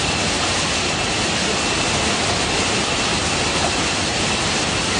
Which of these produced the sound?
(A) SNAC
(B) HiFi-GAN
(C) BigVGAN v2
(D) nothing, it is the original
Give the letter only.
D